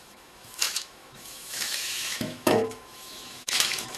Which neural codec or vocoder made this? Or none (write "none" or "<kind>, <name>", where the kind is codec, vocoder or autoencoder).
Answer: autoencoder, DAC-VAE